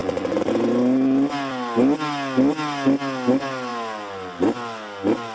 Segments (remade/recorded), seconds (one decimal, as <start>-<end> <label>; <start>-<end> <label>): 0.0-0.5 remade; 0.5-5.3 recorded